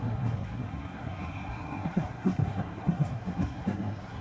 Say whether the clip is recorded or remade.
remade